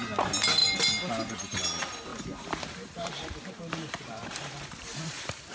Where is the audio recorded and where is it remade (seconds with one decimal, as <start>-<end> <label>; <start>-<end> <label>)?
0.0-2.1 recorded; 2.1-5.5 remade